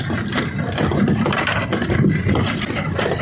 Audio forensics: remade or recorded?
recorded